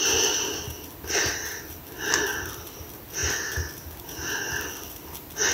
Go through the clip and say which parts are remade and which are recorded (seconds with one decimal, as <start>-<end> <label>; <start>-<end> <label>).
0.0-5.5 recorded